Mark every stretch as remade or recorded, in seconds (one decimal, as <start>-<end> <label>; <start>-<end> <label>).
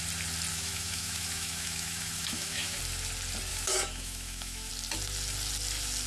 0.0-0.5 recorded; 0.5-2.8 remade; 2.8-3.5 recorded; 3.5-4.7 remade; 4.7-6.1 recorded